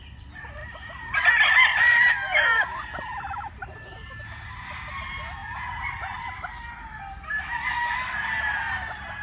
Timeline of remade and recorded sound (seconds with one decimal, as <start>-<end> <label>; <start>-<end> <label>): 0.0-5.4 recorded; 5.4-7.0 remade; 7.0-9.2 recorded